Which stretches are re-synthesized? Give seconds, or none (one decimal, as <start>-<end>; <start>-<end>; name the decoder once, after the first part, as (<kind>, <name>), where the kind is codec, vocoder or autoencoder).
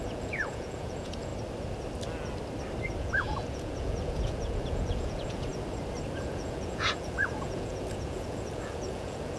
0.0-1.3 (vocoder, Vocos); 3.0-5.5; 6.1-9.4